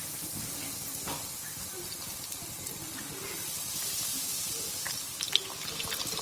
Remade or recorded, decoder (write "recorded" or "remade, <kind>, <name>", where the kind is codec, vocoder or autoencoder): recorded